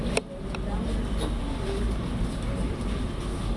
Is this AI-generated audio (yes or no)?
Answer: no